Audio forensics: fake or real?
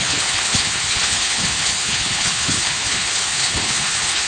fake